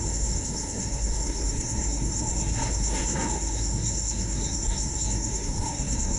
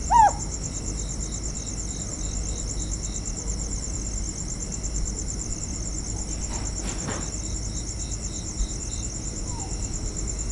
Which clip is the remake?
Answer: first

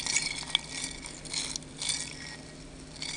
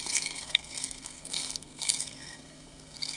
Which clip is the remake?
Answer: second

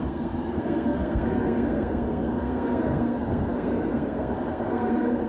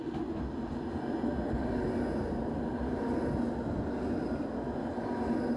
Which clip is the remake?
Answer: first